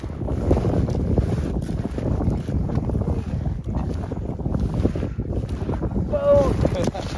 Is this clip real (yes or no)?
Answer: yes